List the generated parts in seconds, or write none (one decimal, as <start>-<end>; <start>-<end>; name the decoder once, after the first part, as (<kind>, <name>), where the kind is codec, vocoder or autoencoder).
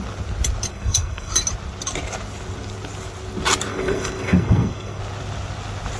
0.7-1.3 (codec, SNAC); 3.7-5.0